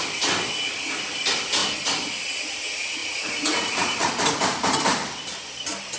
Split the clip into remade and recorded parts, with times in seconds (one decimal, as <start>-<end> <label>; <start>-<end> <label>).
0.0-3.0 recorded; 3.0-4.1 remade; 4.1-6.0 recorded